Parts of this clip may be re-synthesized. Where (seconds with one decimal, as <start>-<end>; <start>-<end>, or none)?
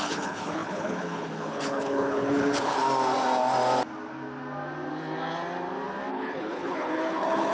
0.0-2.8; 6.1-7.5